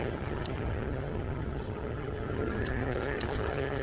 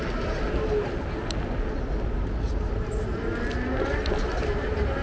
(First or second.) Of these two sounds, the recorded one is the second